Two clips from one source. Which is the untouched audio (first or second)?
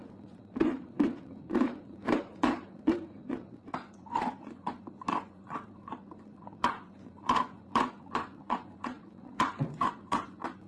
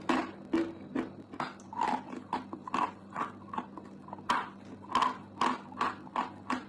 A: second